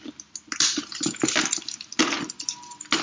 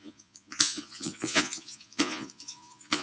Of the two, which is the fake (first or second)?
second